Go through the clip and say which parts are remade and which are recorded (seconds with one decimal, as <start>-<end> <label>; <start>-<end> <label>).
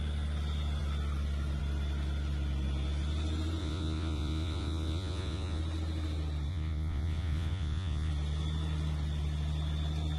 0.0-3.6 recorded; 3.6-5.6 remade; 5.6-6.5 recorded; 6.5-8.1 remade; 8.1-10.2 recorded